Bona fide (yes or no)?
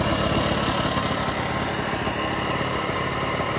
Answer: yes